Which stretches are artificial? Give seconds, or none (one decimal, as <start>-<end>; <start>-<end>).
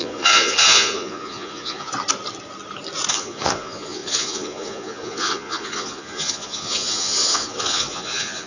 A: 0.0-1.9; 3.1-8.5